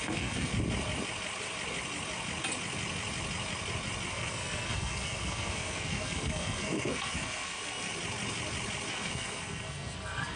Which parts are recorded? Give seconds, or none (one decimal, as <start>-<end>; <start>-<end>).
0.5-4.1; 7.9-8.9